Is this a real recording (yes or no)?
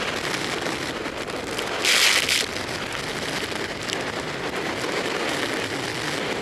yes